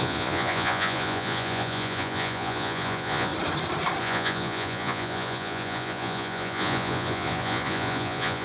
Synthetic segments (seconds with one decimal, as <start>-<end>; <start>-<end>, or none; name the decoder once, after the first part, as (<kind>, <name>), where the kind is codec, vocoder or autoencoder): 0.0-3.3 (vocoder, Vocos); 4.0-8.4